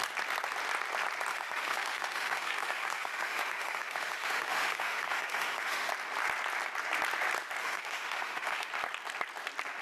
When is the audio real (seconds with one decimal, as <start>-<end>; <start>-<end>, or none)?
0.0-1.3; 5.9-7.6; 8.7-9.8